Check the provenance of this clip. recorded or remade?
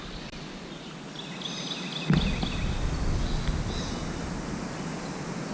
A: recorded